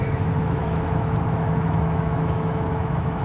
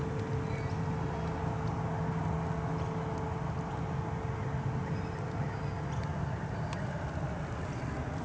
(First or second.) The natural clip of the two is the second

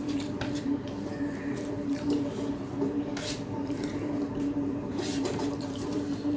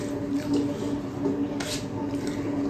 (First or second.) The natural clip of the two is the second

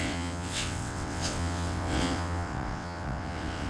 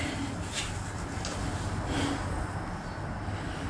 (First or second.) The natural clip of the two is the second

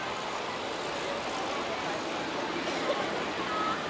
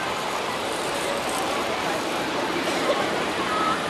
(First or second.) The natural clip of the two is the first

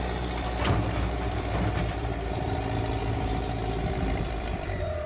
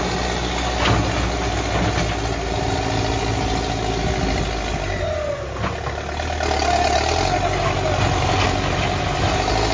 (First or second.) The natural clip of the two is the second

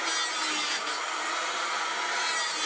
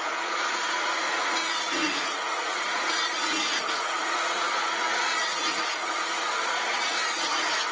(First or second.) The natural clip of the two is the first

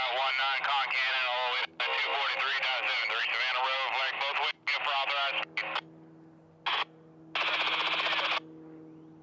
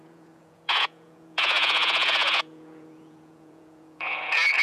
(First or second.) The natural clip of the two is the first